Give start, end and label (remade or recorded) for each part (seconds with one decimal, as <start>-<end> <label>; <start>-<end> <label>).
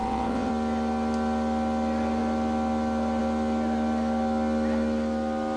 0.0-0.5 remade; 0.5-5.6 recorded